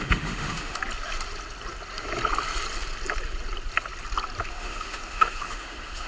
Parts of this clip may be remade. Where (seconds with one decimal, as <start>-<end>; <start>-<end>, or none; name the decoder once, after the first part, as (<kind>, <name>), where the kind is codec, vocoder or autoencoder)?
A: 0.0-0.8 (autoencoder, DAC-VAE); 4.5-6.1